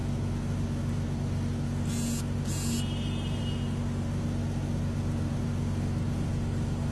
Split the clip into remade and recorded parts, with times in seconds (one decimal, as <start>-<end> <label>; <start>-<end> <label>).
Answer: 0.0-6.9 recorded